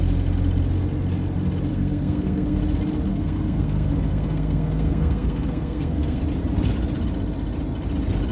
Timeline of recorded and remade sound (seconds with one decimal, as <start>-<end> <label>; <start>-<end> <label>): 0.0-1.7 recorded; 1.7-2.6 remade; 2.6-3.1 recorded; 3.1-6.2 remade; 6.2-8.3 recorded